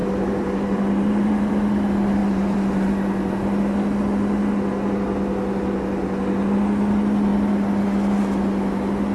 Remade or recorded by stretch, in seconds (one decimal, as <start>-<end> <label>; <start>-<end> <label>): 0.0-1.5 remade; 1.5-2.2 recorded; 2.2-2.9 remade; 2.9-9.1 recorded